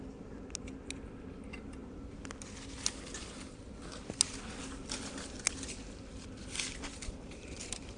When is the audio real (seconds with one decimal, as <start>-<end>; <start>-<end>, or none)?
0.0-8.0